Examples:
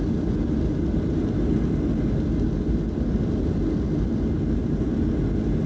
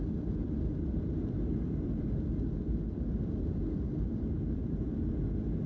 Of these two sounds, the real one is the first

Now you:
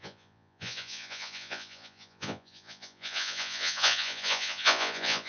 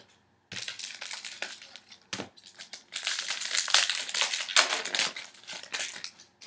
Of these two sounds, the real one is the second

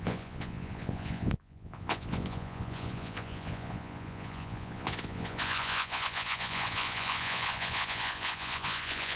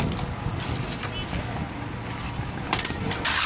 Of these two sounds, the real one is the second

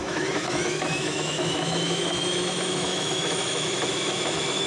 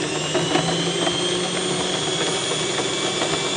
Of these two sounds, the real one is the second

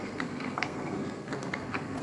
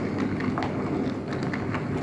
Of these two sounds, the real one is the second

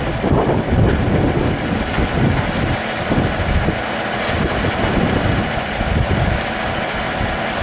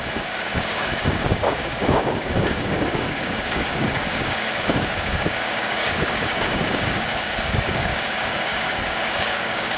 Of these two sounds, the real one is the first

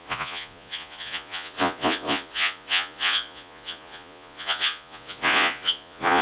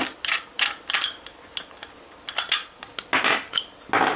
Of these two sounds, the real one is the second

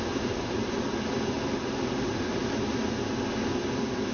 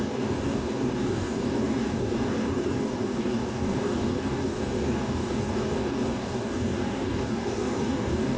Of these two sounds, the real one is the first